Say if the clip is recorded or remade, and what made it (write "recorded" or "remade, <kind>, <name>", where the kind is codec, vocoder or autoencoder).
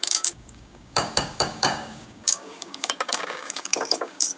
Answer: remade, codec, DAC